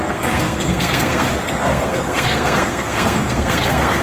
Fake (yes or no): yes